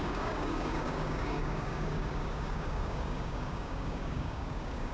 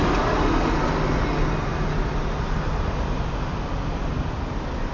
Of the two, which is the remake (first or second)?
first